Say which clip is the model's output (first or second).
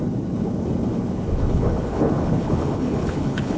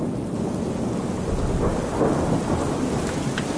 first